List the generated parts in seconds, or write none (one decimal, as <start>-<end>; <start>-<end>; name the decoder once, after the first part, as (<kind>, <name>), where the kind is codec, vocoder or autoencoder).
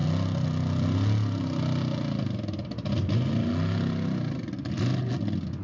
none